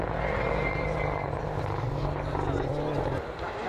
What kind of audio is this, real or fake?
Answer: real